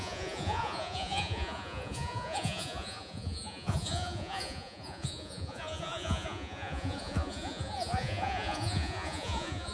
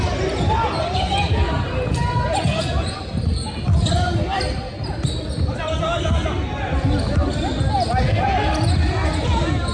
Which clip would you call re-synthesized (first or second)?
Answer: first